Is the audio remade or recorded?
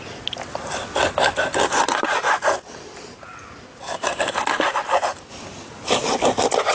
recorded